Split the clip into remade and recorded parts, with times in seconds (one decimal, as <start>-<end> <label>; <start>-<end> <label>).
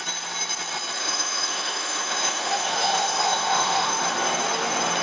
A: 0.0-1.0 recorded; 1.0-4.0 remade; 4.0-5.0 recorded